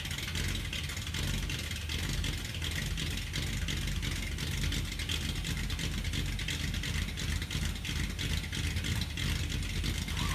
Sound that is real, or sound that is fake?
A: real